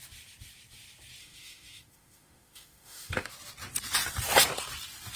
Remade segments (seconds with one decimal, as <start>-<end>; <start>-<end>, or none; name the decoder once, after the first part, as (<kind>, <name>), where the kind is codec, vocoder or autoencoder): 1.2-3.3 (autoencoder, DAC-VAE)